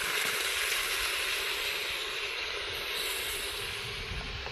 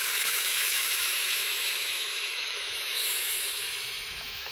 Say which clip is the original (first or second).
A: first